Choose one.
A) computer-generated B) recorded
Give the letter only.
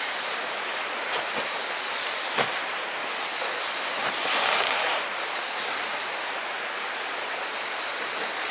B